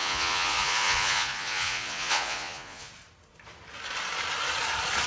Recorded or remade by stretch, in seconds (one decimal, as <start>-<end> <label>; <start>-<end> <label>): 0.0-2.9 remade; 2.9-5.1 recorded